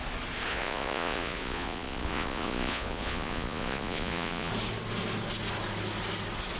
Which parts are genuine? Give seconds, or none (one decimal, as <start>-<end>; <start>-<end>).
0.0-0.5; 4.5-6.6